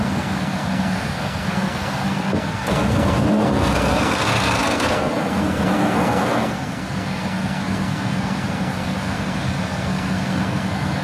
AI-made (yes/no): yes